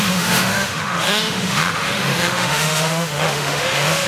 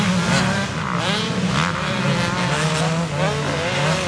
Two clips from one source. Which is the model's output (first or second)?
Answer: first